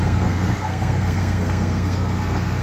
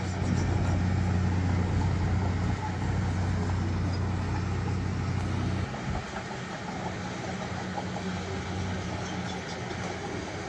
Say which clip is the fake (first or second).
first